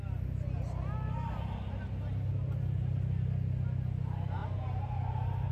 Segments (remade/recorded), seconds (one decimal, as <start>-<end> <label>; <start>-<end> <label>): 0.0-4.4 recorded; 4.4-5.5 remade